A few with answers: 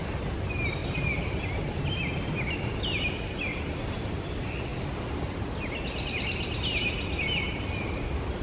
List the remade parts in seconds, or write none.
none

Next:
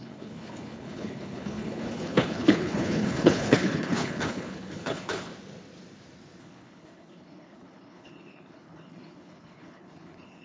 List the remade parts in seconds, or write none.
0.0-5.3; 6.4-10.4